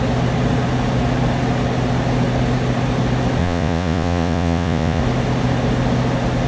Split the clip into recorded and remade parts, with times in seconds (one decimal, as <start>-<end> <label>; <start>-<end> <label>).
0.0-3.4 recorded; 3.4-5.0 remade; 5.0-6.5 recorded